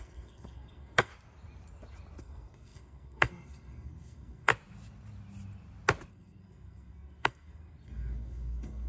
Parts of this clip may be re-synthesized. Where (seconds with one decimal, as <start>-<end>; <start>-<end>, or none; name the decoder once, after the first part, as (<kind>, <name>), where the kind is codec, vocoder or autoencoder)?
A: 0.0-1.1 (codec, SNAC); 2.2-4.5; 6.1-8.9